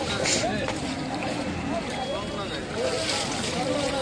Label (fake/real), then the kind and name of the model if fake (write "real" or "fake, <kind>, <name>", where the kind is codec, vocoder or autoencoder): real